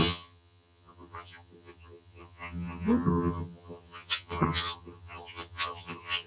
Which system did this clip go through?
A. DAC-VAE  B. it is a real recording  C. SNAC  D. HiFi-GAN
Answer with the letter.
D